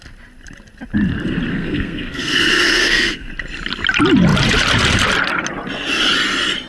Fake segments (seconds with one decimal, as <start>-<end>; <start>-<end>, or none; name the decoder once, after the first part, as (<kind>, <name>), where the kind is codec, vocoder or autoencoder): 1.5-3.3 (codec, SNAC)